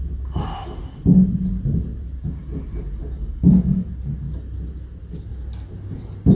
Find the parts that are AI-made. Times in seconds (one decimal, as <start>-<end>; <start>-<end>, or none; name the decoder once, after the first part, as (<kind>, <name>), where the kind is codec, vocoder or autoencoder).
3.2-3.9 (codec, DAC)